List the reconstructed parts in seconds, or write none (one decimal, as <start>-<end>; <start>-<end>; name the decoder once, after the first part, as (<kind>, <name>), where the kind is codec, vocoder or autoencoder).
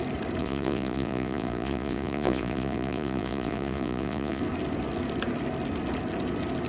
0.4-4.4 (vocoder, Vocos)